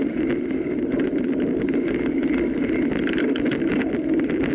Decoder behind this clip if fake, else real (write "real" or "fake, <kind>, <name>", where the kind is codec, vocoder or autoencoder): fake, vocoder, BigVGAN v2